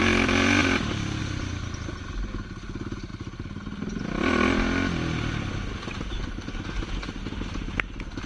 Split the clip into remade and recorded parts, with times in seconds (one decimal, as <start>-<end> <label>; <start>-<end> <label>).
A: 0.0-8.3 recorded